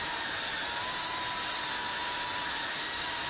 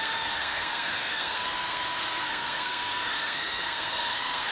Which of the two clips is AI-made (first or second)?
second